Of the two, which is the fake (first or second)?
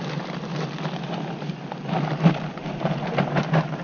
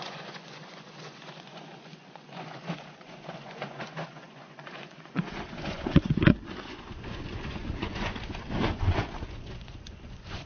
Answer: second